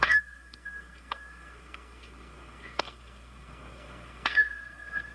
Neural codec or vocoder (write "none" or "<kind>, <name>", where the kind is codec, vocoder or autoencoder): codec, SNAC